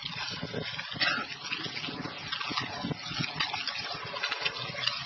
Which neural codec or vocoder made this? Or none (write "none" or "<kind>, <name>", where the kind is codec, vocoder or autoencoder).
none